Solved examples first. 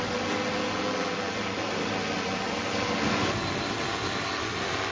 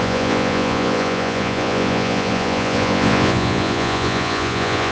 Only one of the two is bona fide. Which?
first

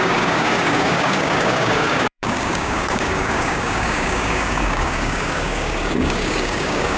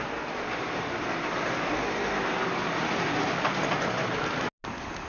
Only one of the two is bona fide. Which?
second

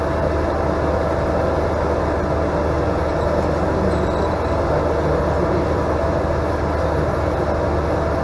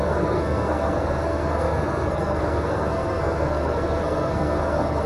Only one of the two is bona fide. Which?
first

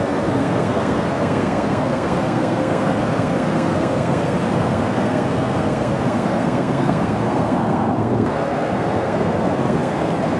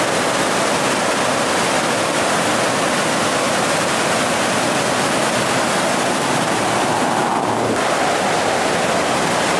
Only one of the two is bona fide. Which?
second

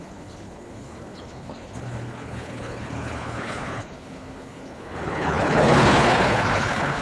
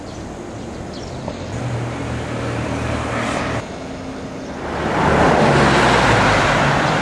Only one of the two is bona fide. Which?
second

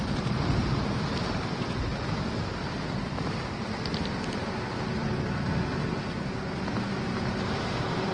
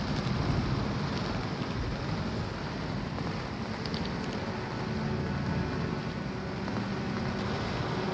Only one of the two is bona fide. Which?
second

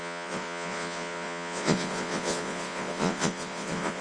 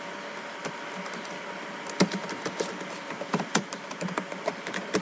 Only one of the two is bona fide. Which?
second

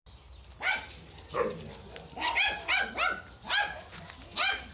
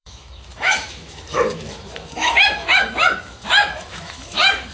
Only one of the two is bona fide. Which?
first